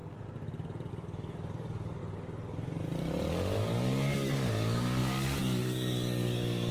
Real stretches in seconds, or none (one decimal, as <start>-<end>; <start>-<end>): 0.0-0.9; 2.0-3.3